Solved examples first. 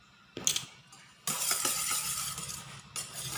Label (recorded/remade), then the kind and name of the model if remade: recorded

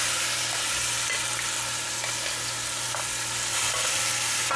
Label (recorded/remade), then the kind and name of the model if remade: recorded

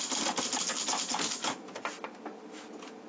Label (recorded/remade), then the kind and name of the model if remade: recorded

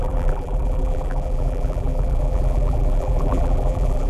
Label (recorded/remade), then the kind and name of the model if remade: remade, vocoder, BigVGAN v2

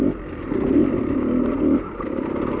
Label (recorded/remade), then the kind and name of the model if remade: recorded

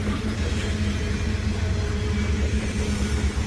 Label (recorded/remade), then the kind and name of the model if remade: recorded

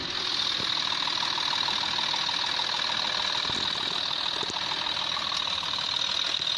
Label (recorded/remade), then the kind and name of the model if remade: recorded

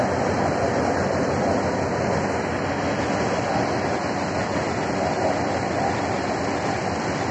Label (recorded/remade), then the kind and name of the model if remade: recorded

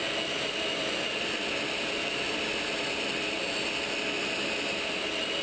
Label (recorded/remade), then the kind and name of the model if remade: recorded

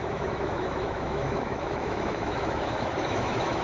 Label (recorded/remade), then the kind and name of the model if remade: remade, autoencoder, DAC-VAE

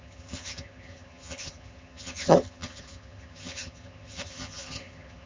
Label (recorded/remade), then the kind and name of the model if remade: remade, vocoder, HiFi-GAN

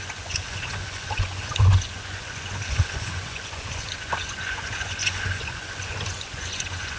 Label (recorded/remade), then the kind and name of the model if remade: remade, vocoder, Vocos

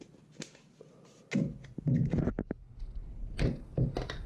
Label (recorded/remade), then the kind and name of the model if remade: recorded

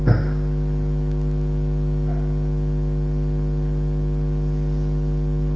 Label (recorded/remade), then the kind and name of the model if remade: recorded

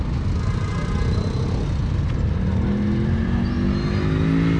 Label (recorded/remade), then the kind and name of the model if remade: recorded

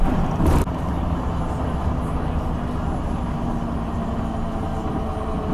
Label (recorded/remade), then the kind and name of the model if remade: recorded